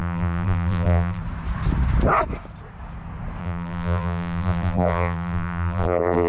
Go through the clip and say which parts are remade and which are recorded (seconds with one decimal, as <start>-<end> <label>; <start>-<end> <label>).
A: 0.0-1.2 remade; 1.2-3.4 recorded; 3.4-6.3 remade